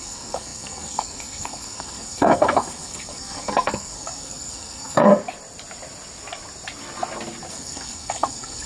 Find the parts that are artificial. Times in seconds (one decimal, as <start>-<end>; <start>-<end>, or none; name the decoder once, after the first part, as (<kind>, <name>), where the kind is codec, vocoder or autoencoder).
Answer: 0.0-5.1 (codec, SNAC); 7.5-8.7